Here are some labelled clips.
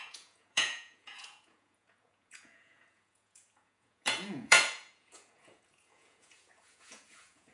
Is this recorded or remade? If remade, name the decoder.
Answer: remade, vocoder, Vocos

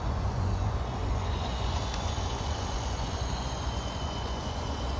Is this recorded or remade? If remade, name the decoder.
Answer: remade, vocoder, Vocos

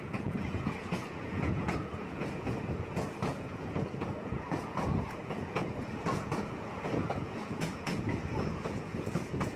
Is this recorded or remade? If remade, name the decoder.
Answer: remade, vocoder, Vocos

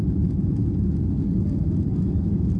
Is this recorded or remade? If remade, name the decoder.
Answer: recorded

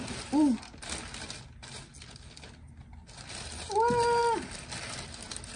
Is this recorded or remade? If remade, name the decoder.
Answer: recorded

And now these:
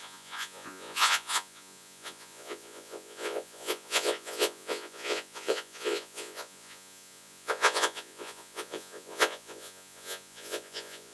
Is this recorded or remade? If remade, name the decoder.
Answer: remade, vocoder, Vocos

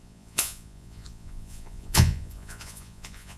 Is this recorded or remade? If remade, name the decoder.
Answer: remade, vocoder, Vocos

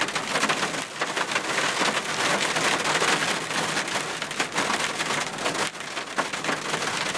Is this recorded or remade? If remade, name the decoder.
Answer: recorded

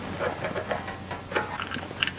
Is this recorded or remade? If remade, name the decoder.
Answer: recorded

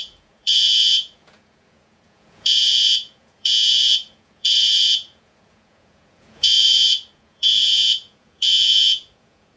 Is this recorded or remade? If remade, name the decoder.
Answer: remade, vocoder, Vocos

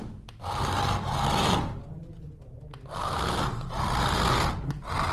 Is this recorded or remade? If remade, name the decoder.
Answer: recorded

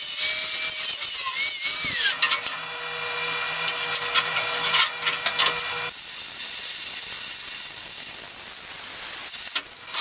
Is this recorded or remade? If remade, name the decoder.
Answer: recorded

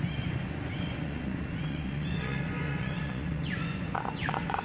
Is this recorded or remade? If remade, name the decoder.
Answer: remade, vocoder, Vocos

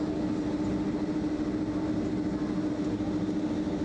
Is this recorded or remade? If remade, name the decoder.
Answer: recorded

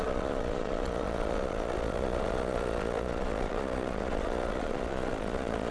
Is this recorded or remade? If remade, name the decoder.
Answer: remade, vocoder, Vocos